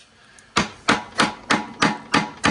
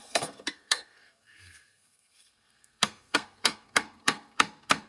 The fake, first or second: second